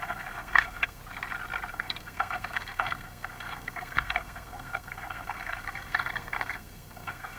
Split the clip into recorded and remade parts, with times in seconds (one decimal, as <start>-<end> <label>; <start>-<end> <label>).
0.0-1.0 remade; 1.0-1.7 recorded; 1.7-7.4 remade